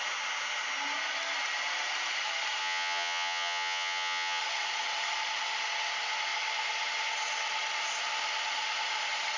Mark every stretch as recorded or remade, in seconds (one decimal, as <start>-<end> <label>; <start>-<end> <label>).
0.0-2.6 recorded; 2.6-4.4 remade; 4.4-9.4 recorded